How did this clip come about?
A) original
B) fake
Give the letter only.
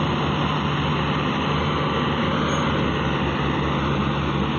A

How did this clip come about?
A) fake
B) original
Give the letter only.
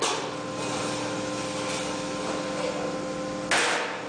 B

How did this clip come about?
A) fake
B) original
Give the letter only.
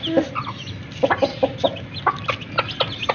B